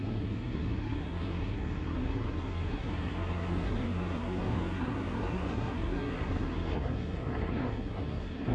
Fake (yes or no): yes